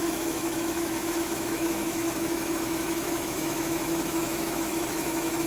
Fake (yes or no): yes